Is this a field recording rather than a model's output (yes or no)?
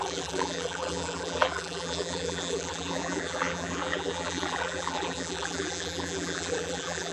no